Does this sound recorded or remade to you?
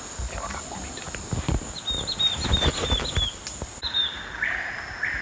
recorded